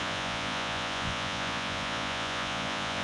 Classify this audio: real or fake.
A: fake